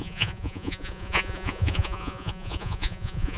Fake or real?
fake